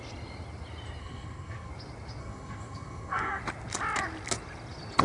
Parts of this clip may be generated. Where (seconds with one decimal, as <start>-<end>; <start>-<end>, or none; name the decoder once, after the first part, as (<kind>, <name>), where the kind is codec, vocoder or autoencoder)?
1.0-1.7 (codec, SNAC); 2.2-3.4